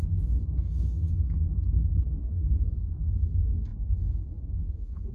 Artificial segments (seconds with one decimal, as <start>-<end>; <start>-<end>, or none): 0.0-5.1

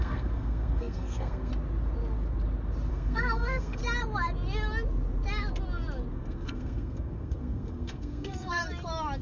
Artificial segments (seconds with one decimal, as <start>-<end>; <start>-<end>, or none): 0.0-1.5; 2.9-3.8; 6.1-8.6

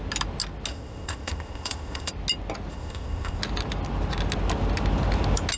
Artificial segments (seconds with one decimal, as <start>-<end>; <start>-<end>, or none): 0.7-2.1; 2.7-3.4

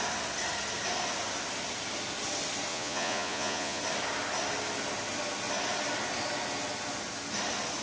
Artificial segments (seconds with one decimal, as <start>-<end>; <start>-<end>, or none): 2.7-3.8